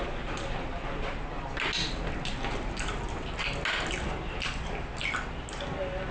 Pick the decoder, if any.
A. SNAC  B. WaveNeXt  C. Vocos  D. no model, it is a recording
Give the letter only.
D